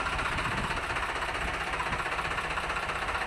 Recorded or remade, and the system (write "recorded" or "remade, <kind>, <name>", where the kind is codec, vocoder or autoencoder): remade, vocoder, BigVGAN v2